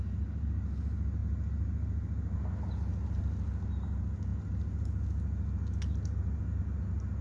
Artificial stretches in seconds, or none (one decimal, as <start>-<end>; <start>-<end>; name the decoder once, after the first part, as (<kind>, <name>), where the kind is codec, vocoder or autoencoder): none